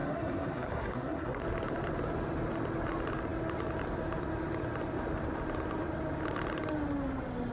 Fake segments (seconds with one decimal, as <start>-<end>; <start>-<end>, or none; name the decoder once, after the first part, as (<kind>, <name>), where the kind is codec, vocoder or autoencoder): 0.0-1.4 (codec, SNAC)